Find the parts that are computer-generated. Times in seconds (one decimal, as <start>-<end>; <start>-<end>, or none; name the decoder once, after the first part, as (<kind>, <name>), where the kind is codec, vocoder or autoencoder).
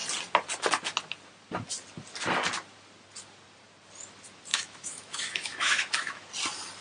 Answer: 4.5-6.3 (autoencoder, DAC-VAE)